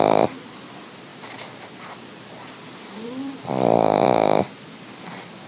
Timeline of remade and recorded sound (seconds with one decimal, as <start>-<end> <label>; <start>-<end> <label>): 0.0-1.1 recorded; 1.1-4.4 remade; 4.4-5.5 recorded